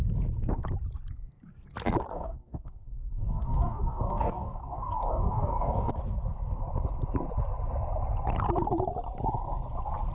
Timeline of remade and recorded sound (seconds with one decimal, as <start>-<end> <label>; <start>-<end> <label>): 0.0-2.1 recorded; 2.1-5.9 remade; 5.9-10.1 recorded